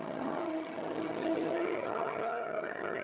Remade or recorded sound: remade